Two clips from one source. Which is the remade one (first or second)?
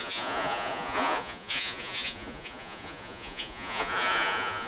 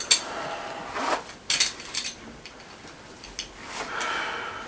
first